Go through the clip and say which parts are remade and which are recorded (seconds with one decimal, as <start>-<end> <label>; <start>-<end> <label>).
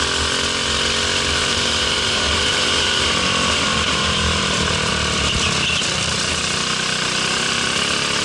0.0-1.4 recorded; 1.4-4.9 remade; 4.9-8.2 recorded